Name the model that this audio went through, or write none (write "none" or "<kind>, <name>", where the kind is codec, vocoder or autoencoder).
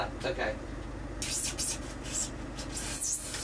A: none